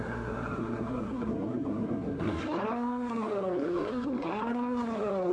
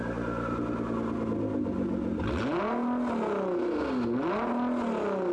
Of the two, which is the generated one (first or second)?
first